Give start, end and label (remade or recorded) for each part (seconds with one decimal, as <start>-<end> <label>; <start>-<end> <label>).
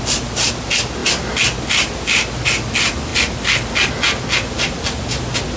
0.0-5.6 recorded